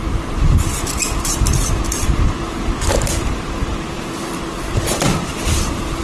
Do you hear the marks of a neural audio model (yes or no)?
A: no